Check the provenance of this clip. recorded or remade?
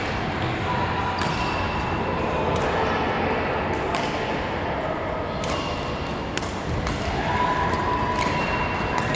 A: recorded